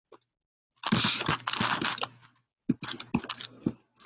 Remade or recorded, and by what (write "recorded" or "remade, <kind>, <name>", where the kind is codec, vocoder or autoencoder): recorded